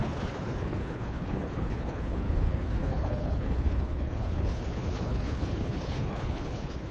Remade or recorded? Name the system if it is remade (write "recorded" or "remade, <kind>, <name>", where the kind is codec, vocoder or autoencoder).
remade, codec, HILCodec